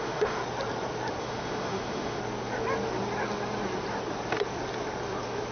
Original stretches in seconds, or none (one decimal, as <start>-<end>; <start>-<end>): 0.4-1.2; 2.2-5.5